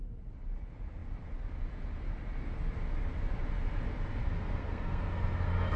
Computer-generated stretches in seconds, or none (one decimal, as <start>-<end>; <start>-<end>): 4.2-5.8